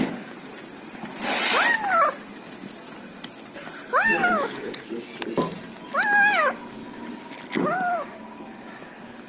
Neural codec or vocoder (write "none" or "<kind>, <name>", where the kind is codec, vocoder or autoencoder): none